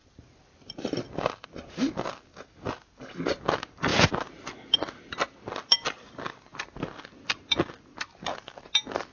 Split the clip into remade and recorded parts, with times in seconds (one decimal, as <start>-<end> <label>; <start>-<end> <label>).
0.0-9.1 recorded